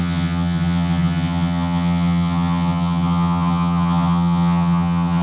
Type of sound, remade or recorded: remade